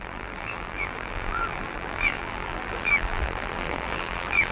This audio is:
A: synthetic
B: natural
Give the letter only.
A